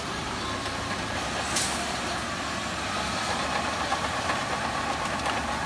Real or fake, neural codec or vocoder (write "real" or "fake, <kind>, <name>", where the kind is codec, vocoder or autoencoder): fake, vocoder, BigVGAN v2